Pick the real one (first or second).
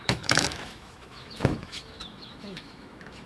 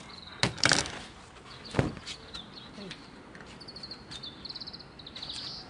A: second